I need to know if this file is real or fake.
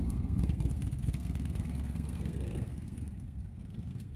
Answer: fake